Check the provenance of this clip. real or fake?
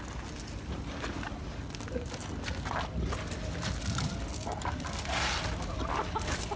real